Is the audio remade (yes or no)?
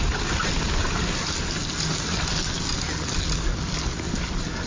no